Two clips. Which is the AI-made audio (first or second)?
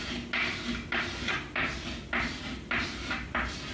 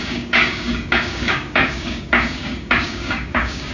second